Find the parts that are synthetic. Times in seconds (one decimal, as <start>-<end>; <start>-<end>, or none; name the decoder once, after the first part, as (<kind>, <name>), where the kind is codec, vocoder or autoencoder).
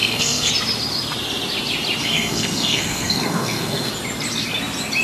0.0-0.5 (codec, SNAC); 2.0-3.9